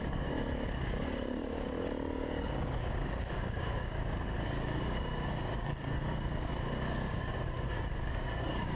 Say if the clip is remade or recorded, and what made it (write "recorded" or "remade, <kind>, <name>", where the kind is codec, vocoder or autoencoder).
remade, codec, DAC